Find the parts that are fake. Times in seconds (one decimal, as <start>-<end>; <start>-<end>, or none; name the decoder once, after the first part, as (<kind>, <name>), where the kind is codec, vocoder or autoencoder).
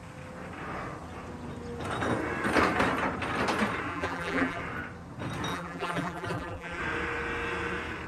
3.9-4.6 (vocoder, BigVGAN v2); 5.5-6.8